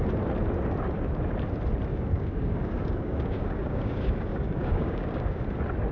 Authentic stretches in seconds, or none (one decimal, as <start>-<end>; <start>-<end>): 0.0-1.9; 5.4-5.9